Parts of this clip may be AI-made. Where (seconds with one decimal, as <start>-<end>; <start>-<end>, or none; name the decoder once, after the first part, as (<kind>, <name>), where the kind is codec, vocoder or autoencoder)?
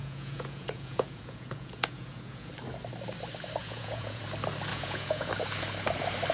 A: 0.0-2.5 (vocoder, Vocos); 3.6-4.2; 4.7-5.3